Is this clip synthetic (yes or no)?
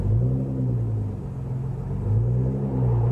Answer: no